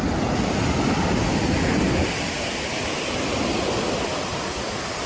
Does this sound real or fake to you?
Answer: real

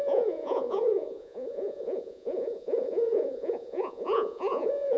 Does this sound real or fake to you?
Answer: fake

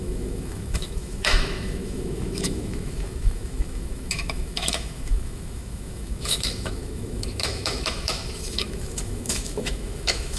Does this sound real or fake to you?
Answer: fake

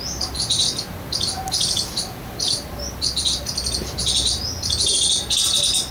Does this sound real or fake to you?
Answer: real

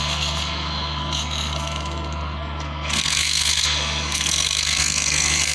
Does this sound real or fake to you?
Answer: fake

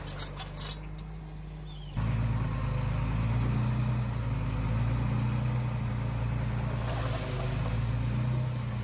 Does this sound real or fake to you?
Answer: real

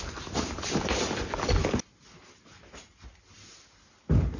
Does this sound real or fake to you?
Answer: real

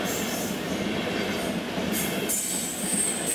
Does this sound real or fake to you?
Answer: real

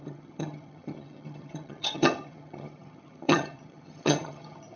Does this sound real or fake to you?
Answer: fake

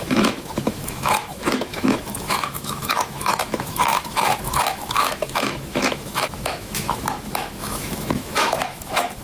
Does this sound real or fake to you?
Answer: fake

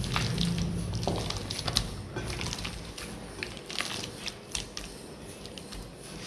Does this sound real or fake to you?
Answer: real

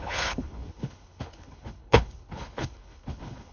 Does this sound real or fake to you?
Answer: fake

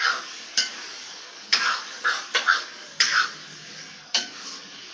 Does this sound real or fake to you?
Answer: fake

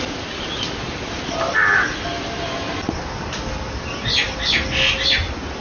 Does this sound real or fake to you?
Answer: real